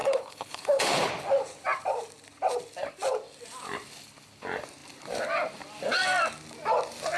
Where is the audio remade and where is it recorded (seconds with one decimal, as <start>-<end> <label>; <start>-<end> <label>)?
0.0-1.1 remade; 1.1-7.2 recorded